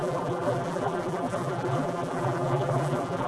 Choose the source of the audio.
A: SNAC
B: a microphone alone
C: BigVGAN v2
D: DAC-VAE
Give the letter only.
C